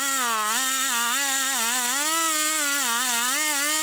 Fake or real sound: real